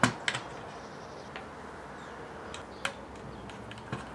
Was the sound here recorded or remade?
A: recorded